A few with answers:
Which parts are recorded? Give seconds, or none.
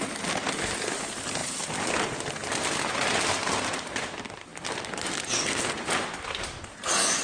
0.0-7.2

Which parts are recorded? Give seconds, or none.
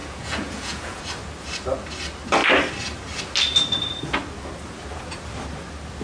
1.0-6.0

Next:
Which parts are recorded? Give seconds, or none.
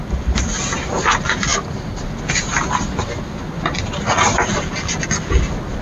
0.0-5.8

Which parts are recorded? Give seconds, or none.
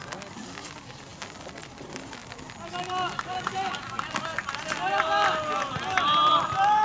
0.0-6.8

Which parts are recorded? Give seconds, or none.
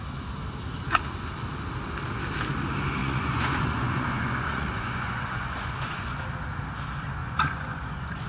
0.0-3.0; 6.2-7.2